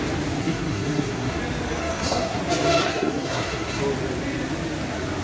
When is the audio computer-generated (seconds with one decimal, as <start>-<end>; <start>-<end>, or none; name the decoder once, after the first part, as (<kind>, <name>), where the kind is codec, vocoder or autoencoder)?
0.4-1.4 (codec, SNAC); 1.8-2.4; 2.8-3.8